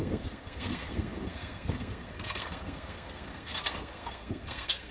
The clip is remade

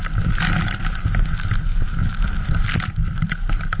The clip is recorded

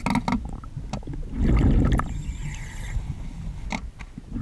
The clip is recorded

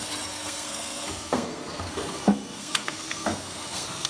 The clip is remade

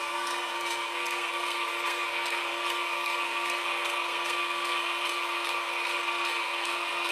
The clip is remade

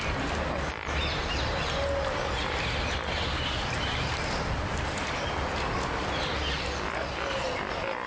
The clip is recorded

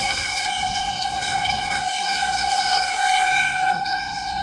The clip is remade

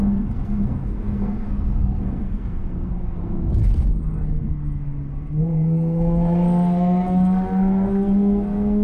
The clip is remade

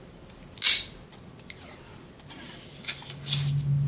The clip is recorded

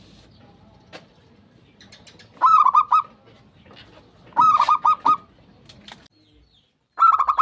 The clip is recorded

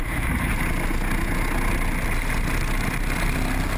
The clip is recorded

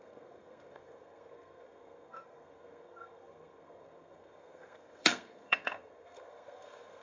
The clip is remade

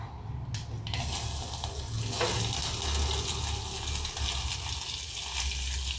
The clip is recorded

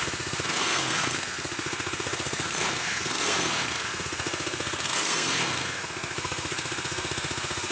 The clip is remade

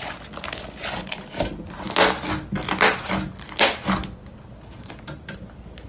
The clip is recorded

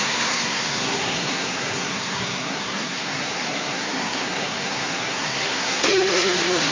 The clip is remade